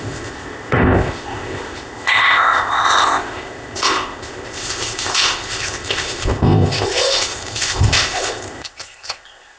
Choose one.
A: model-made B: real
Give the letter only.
A